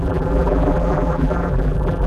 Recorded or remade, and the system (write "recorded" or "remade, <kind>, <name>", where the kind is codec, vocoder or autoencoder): remade, vocoder, BigVGAN v2